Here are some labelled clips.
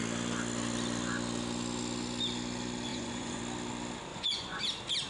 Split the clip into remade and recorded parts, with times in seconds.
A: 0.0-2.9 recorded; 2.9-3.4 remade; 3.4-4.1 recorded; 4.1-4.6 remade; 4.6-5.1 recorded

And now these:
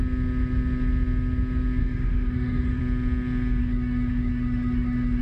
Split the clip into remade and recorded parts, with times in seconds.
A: 0.0-1.8 recorded; 1.8-2.8 remade; 2.8-3.6 recorded; 3.6-5.2 remade

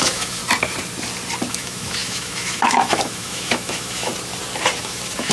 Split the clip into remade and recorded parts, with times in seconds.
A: 0.0-0.4 remade; 0.4-1.5 recorded; 1.5-4.1 remade; 4.1-4.8 recorded; 4.8-5.3 remade

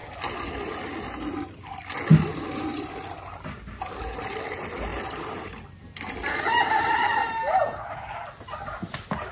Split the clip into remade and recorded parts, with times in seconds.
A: 0.0-9.3 recorded

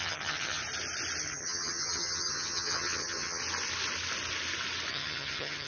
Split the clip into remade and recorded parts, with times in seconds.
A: 0.0-0.6 remade; 0.6-1.2 recorded; 1.2-3.4 remade; 3.4-4.9 recorded; 4.9-5.7 remade